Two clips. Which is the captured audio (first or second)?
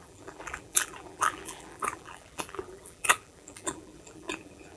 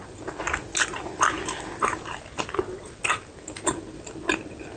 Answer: second